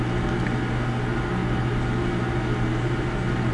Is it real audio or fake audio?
real